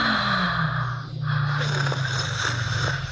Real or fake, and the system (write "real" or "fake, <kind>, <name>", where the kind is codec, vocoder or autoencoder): real